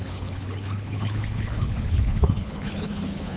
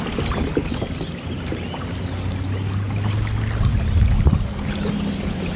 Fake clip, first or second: first